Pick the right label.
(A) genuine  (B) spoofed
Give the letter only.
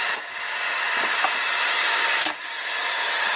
A